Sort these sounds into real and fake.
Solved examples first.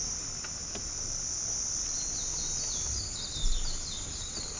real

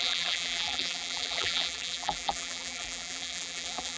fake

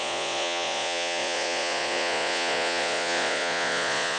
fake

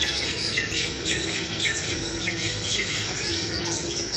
fake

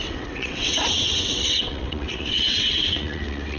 fake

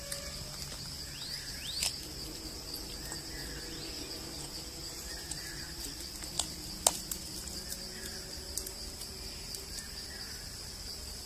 real